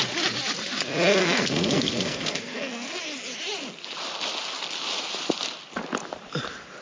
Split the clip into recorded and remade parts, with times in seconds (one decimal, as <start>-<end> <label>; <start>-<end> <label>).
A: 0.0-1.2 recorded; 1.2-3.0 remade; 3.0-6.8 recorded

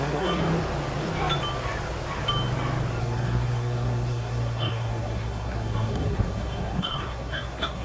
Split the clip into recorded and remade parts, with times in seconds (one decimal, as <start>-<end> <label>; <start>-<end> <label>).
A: 0.0-0.4 remade; 0.4-3.0 recorded; 3.0-7.8 remade

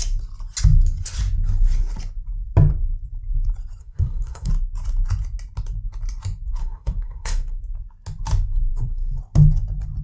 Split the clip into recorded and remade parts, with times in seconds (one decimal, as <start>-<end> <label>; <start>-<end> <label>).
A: 0.0-3.8 recorded; 3.8-4.5 remade; 4.5-6.6 recorded; 6.6-7.6 remade; 7.6-8.7 recorded; 8.7-9.2 remade; 9.2-10.0 recorded